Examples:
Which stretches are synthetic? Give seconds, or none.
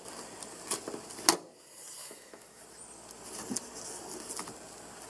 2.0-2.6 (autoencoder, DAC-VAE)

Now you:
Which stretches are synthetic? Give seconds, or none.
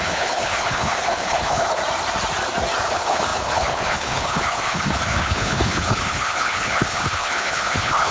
0.0-1.8 (codec, HILCodec); 2.9-8.1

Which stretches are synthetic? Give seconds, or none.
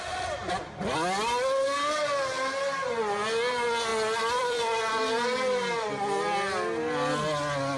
3.9-4.6 (vocoder, BigVGAN v2)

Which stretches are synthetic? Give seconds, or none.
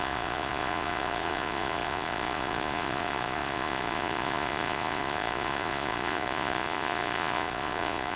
0.0-8.2 (vocoder, Vocos)